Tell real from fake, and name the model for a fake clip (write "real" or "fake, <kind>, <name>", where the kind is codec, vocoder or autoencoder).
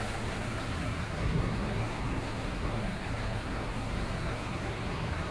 fake, codec, SNAC